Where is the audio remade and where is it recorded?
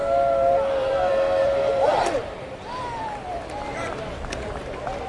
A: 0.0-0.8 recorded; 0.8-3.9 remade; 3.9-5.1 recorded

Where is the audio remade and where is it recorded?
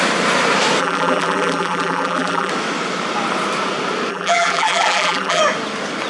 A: 0.0-0.8 recorded; 0.8-2.5 remade; 2.5-4.1 recorded; 4.1-5.4 remade; 5.4-6.1 recorded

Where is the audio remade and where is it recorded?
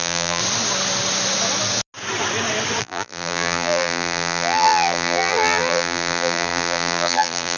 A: 0.0-0.4 remade; 0.4-2.8 recorded; 2.8-7.6 remade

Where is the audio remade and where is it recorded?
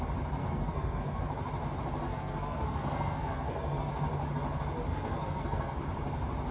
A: 0.0-0.4 recorded; 0.4-1.2 remade; 1.2-2.0 recorded; 2.0-3.9 remade; 3.9-4.9 recorded; 4.9-5.8 remade; 5.8-6.5 recorded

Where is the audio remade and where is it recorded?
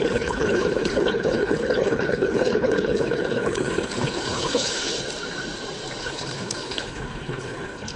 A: 0.0-4.9 remade; 4.9-6.0 recorded; 6.0-8.0 remade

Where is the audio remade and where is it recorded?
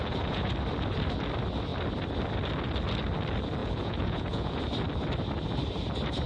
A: 0.0-0.5 remade; 0.5-3.6 recorded; 3.6-4.6 remade; 4.6-6.3 recorded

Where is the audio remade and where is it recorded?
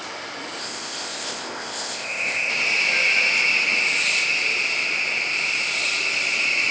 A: 0.0-0.6 recorded; 0.6-2.5 remade; 2.5-6.7 recorded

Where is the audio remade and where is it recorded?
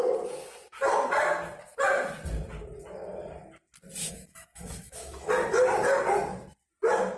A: 0.0-4.0 recorded; 4.0-5.3 remade; 5.3-7.2 recorded